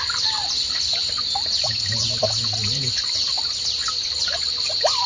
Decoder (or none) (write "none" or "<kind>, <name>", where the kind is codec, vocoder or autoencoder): none